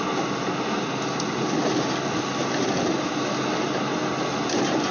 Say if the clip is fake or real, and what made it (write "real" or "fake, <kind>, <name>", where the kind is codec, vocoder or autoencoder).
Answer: real